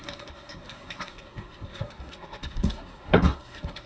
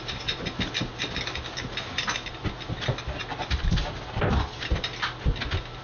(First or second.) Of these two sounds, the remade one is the first